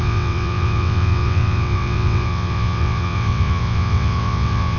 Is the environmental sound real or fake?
fake